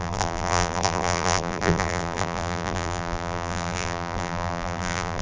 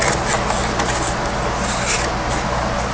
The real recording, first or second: second